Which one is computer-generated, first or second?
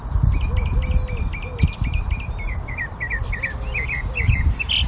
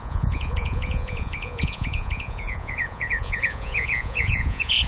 second